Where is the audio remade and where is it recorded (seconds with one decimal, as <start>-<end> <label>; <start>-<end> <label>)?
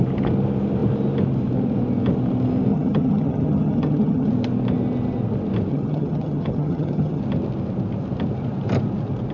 0.0-2.7 recorded; 2.7-4.3 remade; 4.3-5.7 recorded; 5.7-7.2 remade; 7.2-9.3 recorded